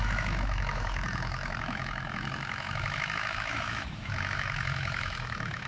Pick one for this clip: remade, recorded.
remade